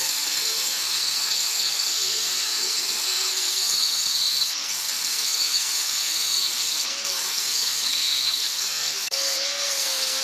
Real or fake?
fake